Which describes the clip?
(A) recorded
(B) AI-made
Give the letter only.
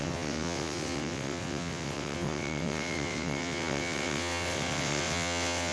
B